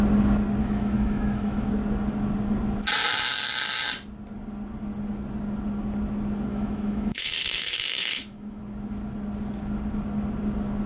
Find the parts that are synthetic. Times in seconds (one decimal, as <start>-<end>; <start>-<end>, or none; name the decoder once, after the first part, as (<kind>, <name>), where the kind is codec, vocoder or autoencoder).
0.6-1.7 (autoencoder, DAC-VAE); 6.5-8.6